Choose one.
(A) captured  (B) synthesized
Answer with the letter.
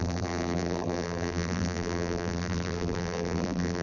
B